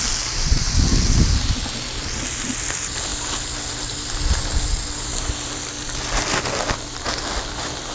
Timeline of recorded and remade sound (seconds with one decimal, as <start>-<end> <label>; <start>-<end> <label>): 0.0-7.9 recorded